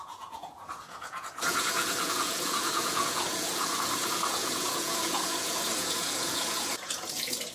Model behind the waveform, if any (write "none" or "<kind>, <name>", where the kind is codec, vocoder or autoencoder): vocoder, Vocos